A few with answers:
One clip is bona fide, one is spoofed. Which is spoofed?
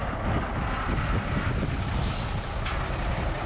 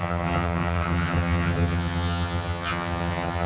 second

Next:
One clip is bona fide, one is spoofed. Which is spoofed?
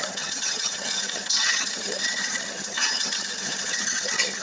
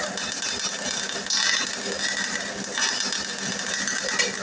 first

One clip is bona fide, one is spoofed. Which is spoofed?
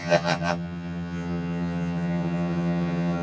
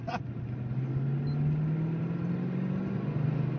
first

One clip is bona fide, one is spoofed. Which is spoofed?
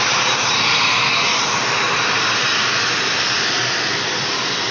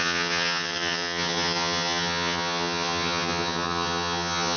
second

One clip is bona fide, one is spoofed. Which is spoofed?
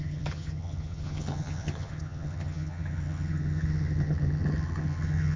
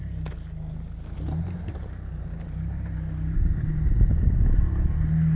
first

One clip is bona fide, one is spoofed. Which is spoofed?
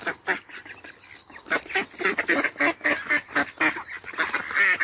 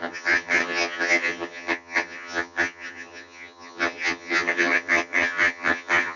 second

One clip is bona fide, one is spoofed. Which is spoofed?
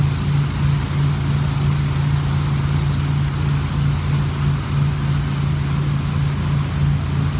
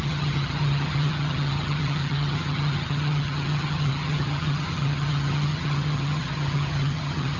second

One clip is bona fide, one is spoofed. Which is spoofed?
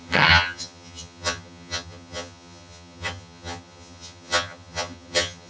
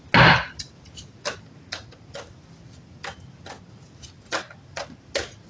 first